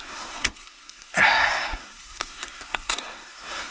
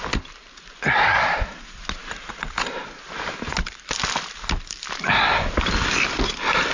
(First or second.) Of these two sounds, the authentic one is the second